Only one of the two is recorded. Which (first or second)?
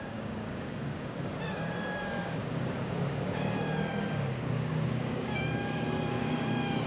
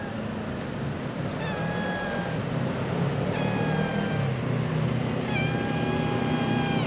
second